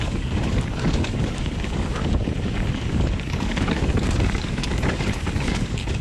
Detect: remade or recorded remade